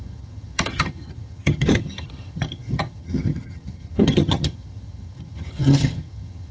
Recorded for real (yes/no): no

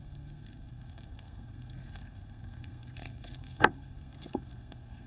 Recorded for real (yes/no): no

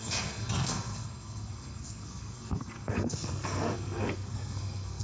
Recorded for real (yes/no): no